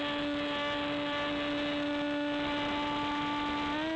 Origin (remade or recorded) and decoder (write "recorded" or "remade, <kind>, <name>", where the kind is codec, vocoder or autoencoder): recorded